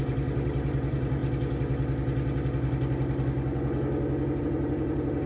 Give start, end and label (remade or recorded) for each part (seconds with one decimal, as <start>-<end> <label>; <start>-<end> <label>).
0.0-1.2 remade; 1.2-4.4 recorded; 4.4-5.3 remade